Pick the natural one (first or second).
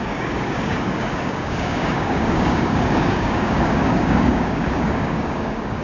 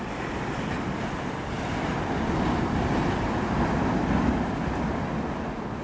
second